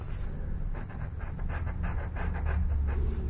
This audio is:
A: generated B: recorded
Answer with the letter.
B